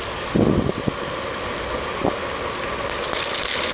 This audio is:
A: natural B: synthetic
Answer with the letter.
A